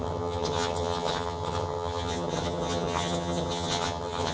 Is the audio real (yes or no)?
no